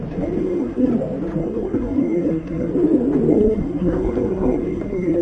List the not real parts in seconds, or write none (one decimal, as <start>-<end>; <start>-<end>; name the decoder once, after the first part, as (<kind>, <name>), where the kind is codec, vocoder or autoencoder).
0.4-0.9 (codec, SNAC); 1.4-2.7; 3.3-5.2